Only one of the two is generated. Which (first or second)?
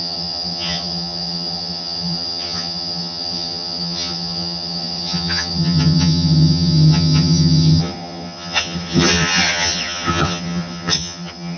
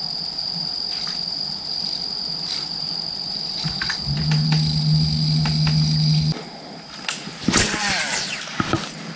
first